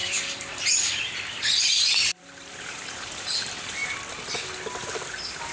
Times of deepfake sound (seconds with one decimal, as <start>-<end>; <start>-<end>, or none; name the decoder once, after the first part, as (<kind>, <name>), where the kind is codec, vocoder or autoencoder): 0.0-3.8 (vocoder, BigVGAN v2); 4.4-5.5